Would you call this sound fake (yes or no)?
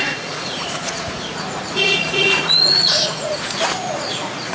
yes